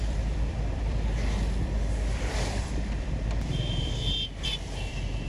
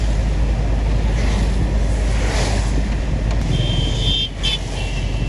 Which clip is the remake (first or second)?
first